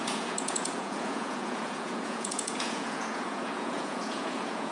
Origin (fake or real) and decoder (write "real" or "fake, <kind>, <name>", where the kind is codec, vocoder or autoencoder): fake, vocoder, Vocos